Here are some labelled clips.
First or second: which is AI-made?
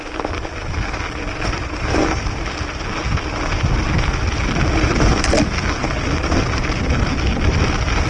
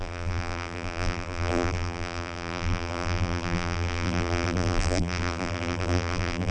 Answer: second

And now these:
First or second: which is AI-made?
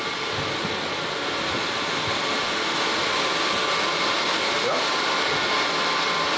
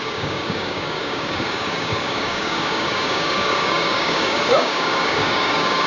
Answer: second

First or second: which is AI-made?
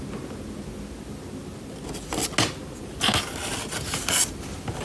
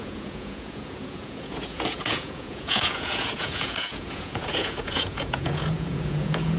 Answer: second